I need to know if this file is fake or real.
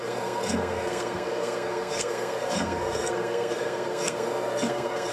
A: fake